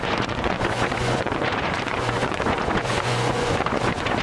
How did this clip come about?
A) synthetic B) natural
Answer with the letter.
A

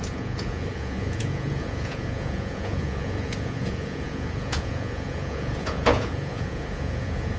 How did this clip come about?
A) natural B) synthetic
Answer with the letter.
B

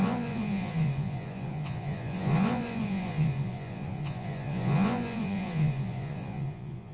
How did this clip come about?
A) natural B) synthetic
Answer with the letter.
B